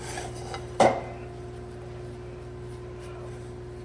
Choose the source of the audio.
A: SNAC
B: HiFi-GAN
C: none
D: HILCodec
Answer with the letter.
C